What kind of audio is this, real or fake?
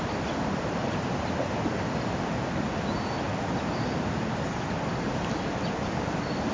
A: fake